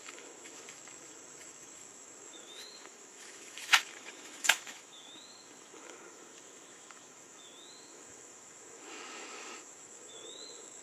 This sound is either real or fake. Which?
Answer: fake